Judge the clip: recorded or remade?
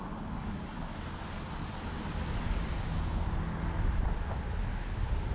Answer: recorded